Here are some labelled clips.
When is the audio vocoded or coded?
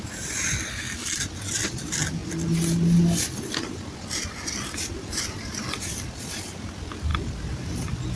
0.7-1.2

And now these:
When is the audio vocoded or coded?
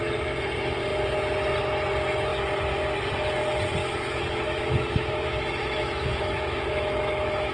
3.8-7.5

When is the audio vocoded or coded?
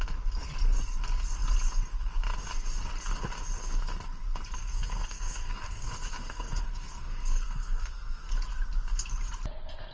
4.7-8.3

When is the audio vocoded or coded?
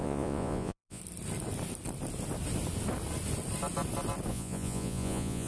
0.0-1.0; 4.3-5.5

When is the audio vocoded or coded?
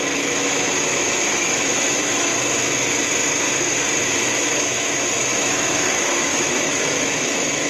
0.0-2.3; 4.0-7.7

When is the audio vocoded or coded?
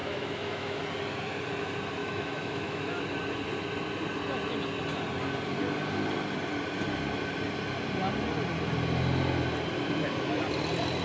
0.0-0.8; 2.0-3.0